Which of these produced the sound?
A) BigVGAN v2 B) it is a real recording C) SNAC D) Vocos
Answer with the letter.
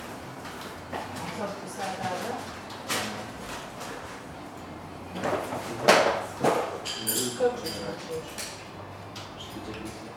A